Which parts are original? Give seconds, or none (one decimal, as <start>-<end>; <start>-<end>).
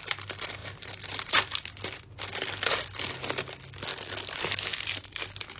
0.0-0.6; 1.3-5.6